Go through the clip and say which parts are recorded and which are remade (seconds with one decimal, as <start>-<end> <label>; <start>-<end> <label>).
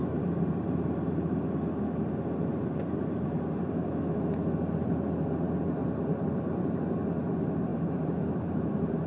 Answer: 0.0-1.4 remade; 1.4-2.5 recorded; 2.5-4.0 remade; 4.0-5.8 recorded; 5.8-6.6 remade; 6.6-7.7 recorded; 7.7-9.1 remade